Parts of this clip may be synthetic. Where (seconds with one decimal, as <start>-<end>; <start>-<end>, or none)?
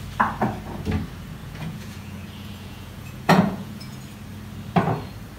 1.4-4.0